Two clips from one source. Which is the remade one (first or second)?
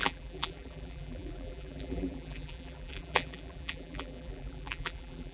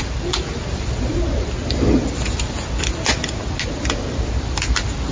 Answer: first